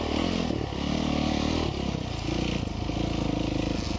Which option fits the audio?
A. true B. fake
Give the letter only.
A